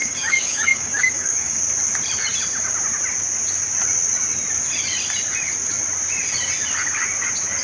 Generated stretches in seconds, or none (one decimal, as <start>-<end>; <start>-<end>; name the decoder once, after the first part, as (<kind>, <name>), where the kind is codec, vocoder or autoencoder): 0.0-1.6 (codec, DAC)